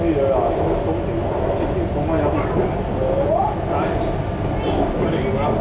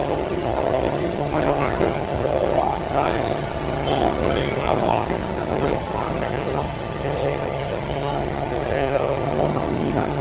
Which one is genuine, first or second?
first